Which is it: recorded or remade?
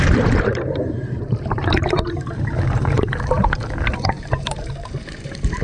remade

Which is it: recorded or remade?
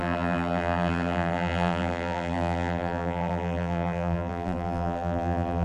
remade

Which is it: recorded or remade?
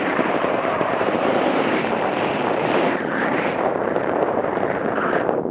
remade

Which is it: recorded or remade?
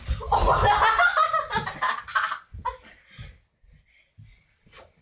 recorded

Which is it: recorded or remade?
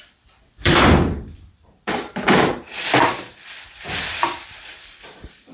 remade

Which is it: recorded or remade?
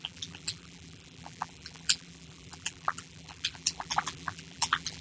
remade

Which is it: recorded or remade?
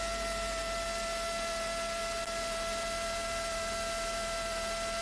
remade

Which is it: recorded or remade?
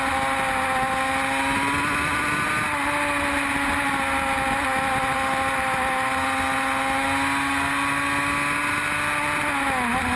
recorded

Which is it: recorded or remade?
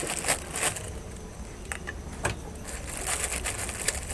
recorded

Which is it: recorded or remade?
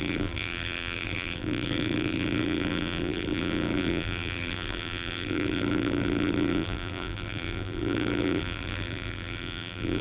remade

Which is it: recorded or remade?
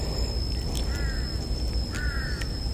remade